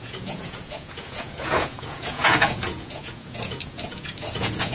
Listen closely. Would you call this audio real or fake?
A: fake